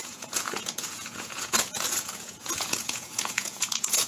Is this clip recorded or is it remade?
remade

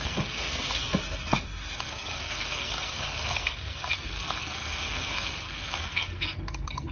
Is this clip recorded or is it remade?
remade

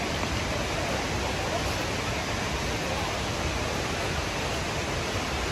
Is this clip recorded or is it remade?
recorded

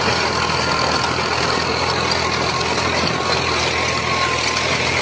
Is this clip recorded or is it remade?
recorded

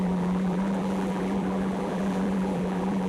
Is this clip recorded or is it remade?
remade